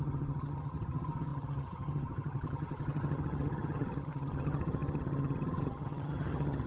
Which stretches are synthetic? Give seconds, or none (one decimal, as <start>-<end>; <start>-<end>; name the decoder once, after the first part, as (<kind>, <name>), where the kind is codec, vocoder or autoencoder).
0.0-6.7 (vocoder, HiFi-GAN)

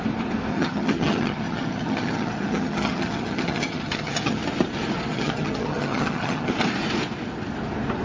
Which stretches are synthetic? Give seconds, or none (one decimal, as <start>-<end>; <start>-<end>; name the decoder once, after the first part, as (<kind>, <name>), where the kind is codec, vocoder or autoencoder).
0.5-4.4 (vocoder, HiFi-GAN); 5.1-6.5

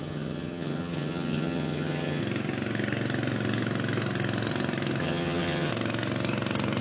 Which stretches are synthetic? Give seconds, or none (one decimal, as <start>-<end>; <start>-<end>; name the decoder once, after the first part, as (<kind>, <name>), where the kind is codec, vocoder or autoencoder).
0.0-2.2 (vocoder, HiFi-GAN); 5.0-5.7

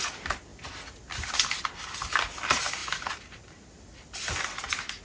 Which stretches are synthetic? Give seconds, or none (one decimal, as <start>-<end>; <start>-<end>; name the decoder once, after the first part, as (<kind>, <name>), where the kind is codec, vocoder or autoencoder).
none

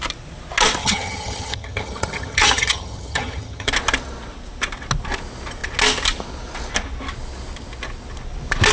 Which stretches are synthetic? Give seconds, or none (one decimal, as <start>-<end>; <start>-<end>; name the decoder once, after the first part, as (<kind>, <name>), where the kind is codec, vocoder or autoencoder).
0.8-3.7 (vocoder, HiFi-GAN)

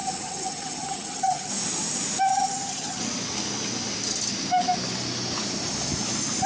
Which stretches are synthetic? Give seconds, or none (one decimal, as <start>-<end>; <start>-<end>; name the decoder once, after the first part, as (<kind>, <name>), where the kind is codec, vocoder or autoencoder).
0.0-1.5 (vocoder, HiFi-GAN); 2.3-3.0